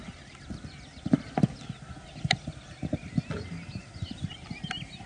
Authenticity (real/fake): real